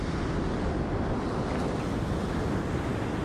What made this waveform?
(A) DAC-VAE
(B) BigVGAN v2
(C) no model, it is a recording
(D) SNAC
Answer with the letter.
C